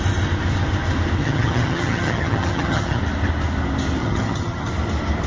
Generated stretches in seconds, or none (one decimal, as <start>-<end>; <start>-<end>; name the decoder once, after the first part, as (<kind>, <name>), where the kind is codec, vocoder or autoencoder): 1.2-3.0 (vocoder, HiFi-GAN); 4.0-4.7